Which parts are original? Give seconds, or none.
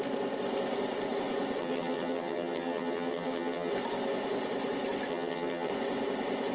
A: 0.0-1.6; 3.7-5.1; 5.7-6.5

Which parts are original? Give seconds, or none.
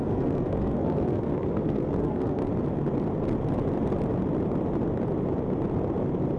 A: 2.4-6.4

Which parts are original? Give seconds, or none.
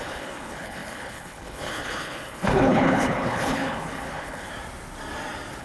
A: 4.5-5.6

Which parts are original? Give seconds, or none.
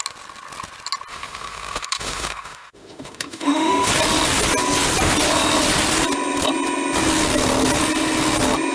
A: 0.0-1.1; 3.9-8.7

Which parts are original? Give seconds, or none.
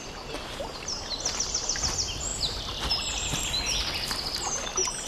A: 0.0-5.1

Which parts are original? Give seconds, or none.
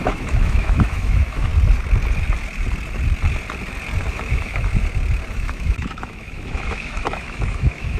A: 1.5-4.1; 4.7-5.3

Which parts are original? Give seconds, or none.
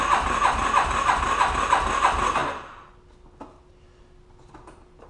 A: 0.0-5.1